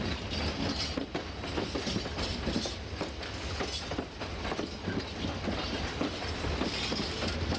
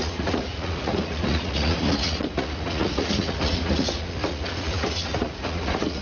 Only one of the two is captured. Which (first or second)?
first